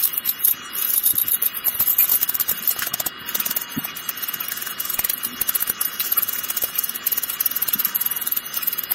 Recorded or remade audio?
recorded